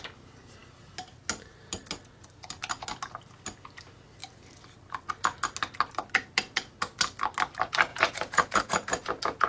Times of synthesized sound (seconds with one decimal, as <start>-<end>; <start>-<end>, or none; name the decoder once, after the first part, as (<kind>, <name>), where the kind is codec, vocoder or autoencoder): 7.9-9.5 (vocoder, Vocos)